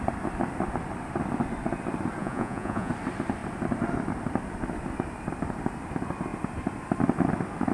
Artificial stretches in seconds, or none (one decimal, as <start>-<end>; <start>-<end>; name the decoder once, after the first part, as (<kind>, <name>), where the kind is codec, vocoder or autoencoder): 2.2-2.9 (vocoder, Vocos)